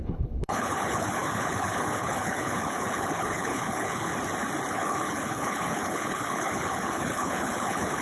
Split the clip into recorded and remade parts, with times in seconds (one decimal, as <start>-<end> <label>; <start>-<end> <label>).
0.0-4.1 remade; 4.1-4.7 recorded; 4.7-8.0 remade

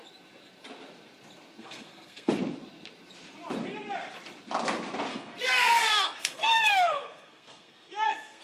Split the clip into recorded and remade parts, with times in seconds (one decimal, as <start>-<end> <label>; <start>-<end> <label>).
0.0-1.6 recorded; 1.6-2.3 remade; 2.3-5.1 recorded; 5.1-8.4 remade

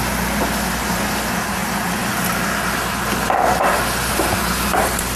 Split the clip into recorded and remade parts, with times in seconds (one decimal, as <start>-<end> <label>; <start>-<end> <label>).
0.0-5.2 recorded

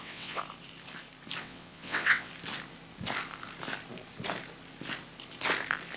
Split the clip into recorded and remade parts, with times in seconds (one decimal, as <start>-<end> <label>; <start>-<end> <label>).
0.0-0.4 remade; 0.4-1.4 recorded; 1.4-2.3 remade; 2.3-6.0 recorded

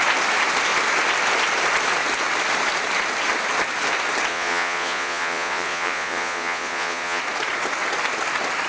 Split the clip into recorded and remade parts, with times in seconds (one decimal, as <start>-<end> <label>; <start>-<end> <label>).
0.0-4.3 recorded; 4.3-7.2 remade; 7.2-8.7 recorded